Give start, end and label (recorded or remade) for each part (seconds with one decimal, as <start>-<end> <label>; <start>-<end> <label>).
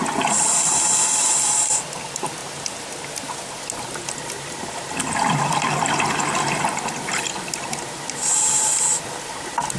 0.0-9.8 recorded